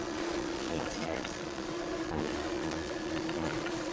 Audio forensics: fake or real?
fake